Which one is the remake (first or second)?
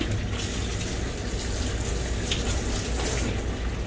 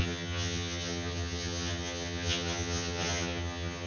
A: second